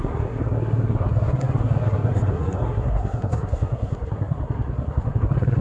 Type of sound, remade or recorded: remade